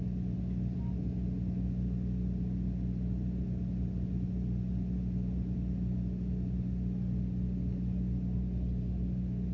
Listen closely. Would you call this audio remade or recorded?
recorded